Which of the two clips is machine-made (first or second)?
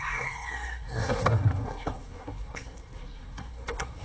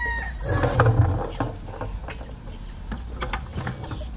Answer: first